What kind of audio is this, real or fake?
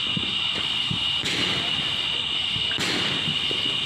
real